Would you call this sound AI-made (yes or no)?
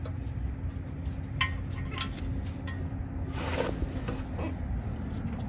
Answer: no